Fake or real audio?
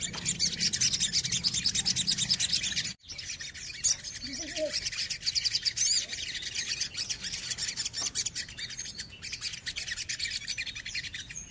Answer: real